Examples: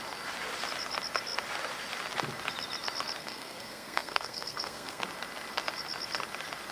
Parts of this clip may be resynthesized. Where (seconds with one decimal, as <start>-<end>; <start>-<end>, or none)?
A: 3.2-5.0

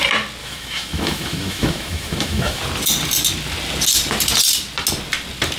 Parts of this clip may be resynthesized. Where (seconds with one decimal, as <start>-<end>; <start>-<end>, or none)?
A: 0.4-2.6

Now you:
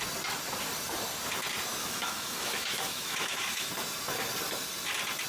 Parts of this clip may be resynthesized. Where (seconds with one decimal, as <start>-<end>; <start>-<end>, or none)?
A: 1.8-3.7